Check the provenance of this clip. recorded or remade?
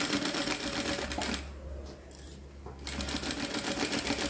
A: recorded